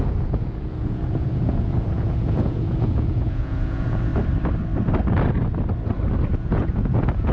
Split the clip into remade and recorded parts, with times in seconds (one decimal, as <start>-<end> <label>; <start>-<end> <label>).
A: 0.0-4.1 remade; 4.1-6.4 recorded; 6.4-7.3 remade